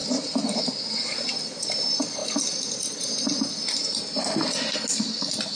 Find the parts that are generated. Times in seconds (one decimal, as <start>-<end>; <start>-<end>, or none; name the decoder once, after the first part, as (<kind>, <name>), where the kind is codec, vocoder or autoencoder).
none